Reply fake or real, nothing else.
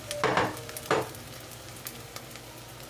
real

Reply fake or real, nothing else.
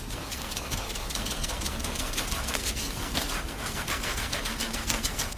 fake